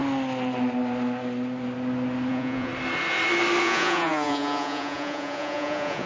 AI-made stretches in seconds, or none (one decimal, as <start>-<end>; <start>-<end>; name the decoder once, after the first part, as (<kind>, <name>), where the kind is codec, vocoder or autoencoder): 2.3-2.7 (vocoder, Vocos); 3.6-6.1